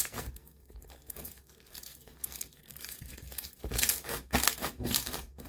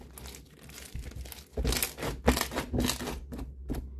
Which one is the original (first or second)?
second